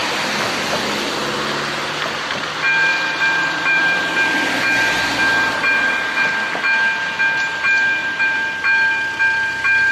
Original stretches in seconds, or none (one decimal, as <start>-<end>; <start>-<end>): 0.0-2.9; 4.1-8.0; 8.5-9.9